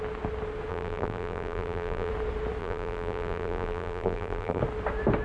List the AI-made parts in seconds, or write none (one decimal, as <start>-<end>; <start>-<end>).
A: 0.7-2.1; 2.6-4.6